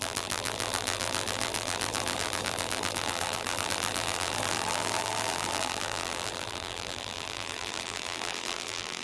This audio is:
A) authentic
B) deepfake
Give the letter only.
B